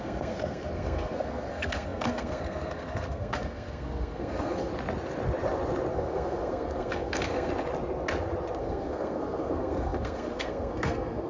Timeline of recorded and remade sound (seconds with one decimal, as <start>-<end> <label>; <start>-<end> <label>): 0.0-4.7 remade; 4.7-5.9 recorded; 5.9-7.5 remade; 7.5-8.6 recorded; 8.6-11.3 remade